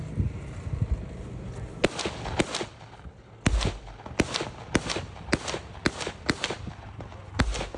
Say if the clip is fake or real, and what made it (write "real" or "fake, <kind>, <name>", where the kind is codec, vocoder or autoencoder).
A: real